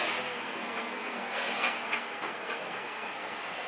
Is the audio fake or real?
fake